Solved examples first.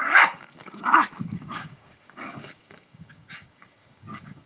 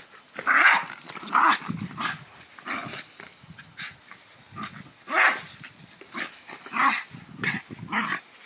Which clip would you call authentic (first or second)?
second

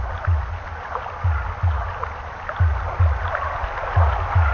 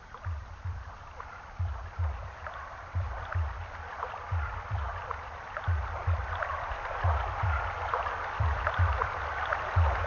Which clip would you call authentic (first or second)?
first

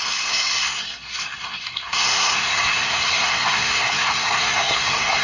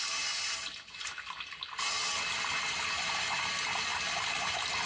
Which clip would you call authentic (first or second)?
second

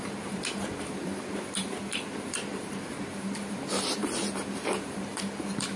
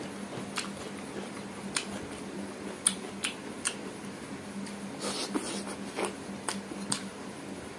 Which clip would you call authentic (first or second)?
second